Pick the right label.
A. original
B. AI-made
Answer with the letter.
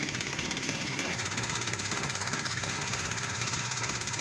B